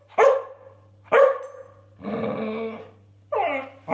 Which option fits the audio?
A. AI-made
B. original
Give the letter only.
B